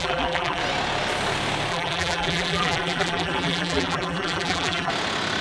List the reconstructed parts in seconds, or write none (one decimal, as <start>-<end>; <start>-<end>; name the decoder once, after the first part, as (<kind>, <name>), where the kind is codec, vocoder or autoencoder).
0.0-0.6 (vocoder, BigVGAN v2); 1.7-4.9

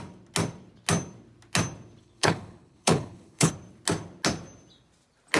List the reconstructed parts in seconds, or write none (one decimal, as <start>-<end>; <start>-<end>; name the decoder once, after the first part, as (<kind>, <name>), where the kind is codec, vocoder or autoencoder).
2.0-3.5 (codec, HILCodec)

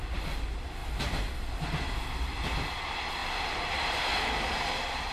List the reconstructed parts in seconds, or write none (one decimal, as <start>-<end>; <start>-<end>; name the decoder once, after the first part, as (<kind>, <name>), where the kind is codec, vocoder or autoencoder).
0.8-1.6 (vocoder, BigVGAN v2); 3.2-4.2